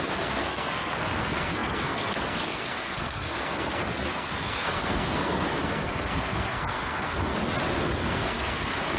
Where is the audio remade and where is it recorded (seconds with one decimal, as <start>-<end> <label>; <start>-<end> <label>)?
0.0-7.3 remade; 7.3-7.8 recorded; 7.8-9.0 remade